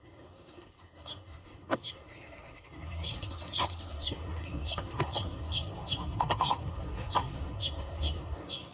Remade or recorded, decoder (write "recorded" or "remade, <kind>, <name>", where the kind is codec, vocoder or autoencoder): remade, codec, SNAC